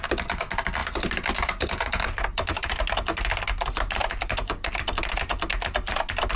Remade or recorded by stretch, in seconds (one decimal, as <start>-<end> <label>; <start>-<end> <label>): 0.0-0.8 recorded; 0.8-2.7 remade; 2.7-4.0 recorded; 4.0-4.7 remade; 4.7-6.4 recorded